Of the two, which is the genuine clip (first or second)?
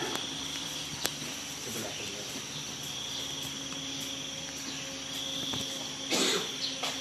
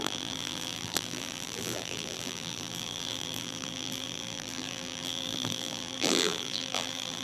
first